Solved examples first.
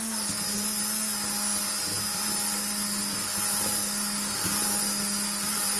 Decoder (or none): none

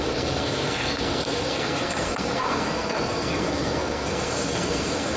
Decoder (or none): codec, SNAC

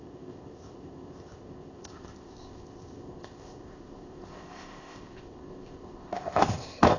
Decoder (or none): codec, ZipCodec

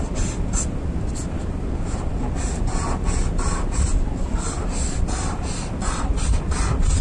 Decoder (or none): none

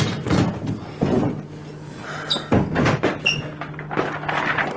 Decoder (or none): none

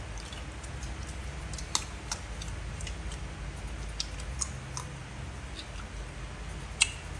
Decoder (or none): none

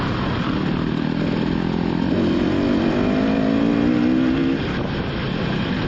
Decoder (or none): none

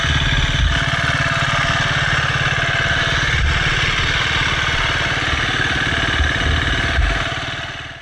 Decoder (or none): none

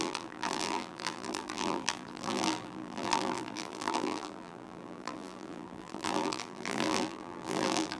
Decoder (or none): vocoder, BigVGAN v2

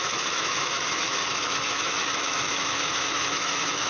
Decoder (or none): autoencoder, DAC-VAE